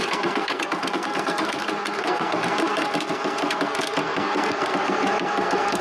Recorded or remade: remade